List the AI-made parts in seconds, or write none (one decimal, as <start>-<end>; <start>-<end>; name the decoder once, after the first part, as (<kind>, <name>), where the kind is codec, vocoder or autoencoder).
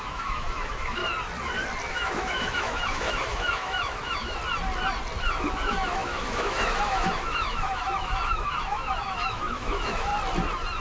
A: 0.0-1.0 (autoencoder, DAC-VAE); 1.9-4.4; 5.2-10.1